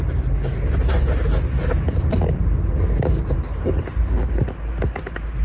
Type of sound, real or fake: real